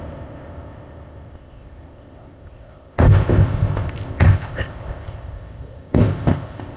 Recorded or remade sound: remade